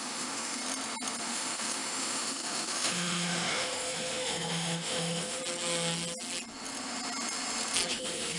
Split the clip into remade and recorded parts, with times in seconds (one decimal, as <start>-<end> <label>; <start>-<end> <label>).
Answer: 0.0-0.6 remade; 0.6-1.2 recorded; 1.2-5.4 remade; 5.4-7.9 recorded; 7.9-8.4 remade